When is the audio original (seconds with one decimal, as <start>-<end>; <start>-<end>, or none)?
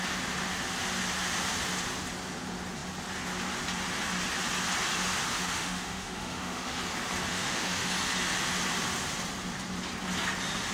0.0-5.3; 6.8-7.3; 7.9-10.7